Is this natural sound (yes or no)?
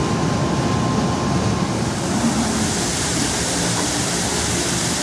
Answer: yes